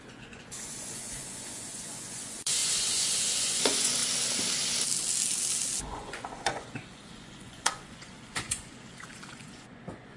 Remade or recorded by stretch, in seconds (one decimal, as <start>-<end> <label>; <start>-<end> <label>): 0.0-4.0 remade; 4.0-5.8 recorded; 5.8-10.2 remade